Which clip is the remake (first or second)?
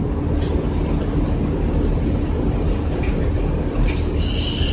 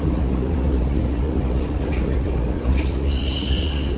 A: second